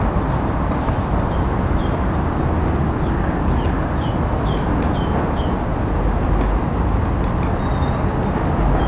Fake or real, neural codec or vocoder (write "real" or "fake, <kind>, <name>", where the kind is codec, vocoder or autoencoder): real